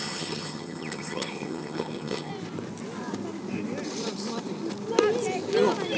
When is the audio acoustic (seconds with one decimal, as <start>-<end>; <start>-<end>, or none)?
2.3-6.0